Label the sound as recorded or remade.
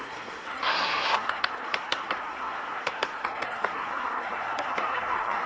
remade